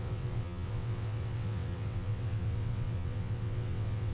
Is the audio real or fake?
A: fake